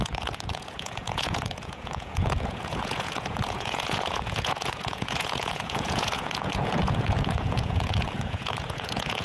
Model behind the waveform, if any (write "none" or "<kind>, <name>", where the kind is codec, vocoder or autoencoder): vocoder, Vocos